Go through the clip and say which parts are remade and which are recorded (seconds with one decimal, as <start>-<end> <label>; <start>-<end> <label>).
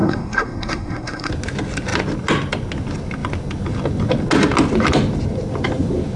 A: 0.0-1.3 remade; 1.3-6.2 recorded